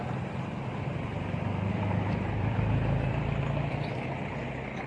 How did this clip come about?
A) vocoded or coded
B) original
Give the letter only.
A